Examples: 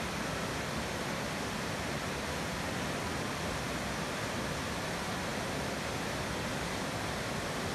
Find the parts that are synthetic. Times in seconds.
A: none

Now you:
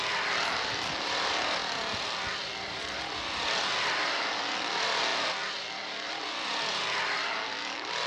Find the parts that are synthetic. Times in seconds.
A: none

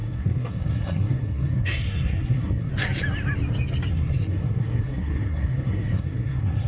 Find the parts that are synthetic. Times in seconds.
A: 0.0-2.7 (codec, SNAC); 3.9-6.7

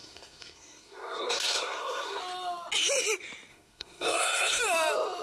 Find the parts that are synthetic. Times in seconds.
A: 0.0-2.2 (codec, SNAC); 3.5-4.6

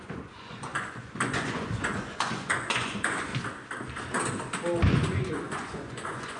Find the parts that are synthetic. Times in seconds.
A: 0.0-3.3 (vocoder, Vocos); 4.9-6.4

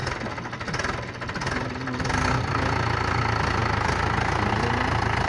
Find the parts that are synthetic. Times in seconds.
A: none